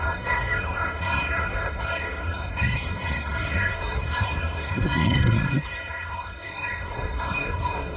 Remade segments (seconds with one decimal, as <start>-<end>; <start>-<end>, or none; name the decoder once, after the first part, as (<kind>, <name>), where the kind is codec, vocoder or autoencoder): 0.0-8.0 (codec, SNAC)